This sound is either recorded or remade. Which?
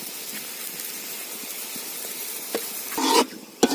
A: recorded